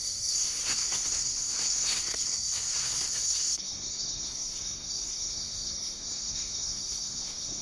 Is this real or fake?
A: fake